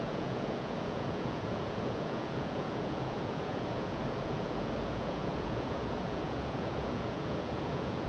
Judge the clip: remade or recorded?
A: remade